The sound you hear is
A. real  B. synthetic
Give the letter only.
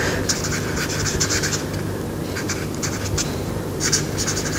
A